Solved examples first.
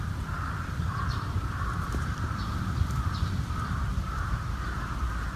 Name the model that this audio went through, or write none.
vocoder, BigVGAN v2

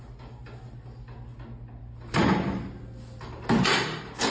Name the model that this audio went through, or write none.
none